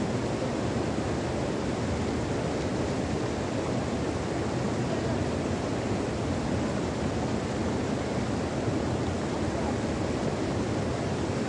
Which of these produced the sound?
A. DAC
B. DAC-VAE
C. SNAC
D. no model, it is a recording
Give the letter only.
D